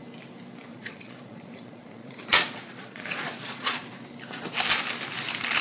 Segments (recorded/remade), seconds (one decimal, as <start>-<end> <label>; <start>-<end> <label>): 0.0-0.7 recorded; 0.7-3.8 remade; 3.8-5.6 recorded